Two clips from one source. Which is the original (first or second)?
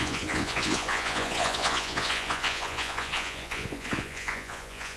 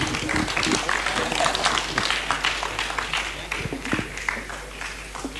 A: second